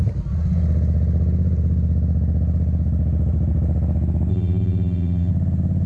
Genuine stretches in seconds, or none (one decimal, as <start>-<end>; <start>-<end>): 0.0-4.3; 5.3-5.9